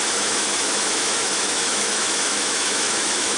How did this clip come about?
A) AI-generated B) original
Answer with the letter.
A